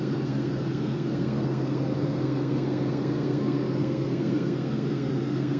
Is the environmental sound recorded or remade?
remade